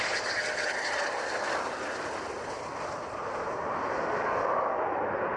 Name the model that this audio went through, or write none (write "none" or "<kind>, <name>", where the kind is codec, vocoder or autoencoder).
none